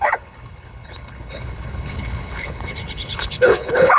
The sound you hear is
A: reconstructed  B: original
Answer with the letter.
A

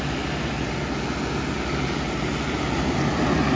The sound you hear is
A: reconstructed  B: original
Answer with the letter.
B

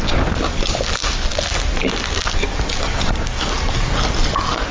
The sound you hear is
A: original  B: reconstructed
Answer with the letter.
A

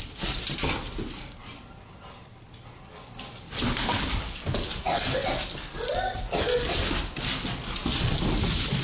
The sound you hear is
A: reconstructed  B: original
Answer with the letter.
B